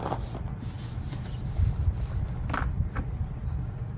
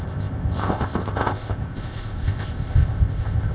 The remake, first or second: second